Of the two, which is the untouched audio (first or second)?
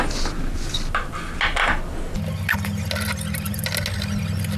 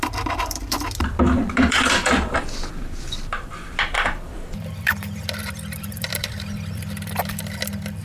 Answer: first